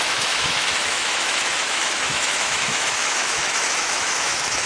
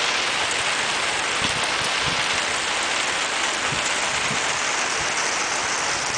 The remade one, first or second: first